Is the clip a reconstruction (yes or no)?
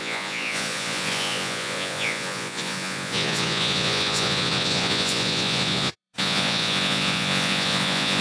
yes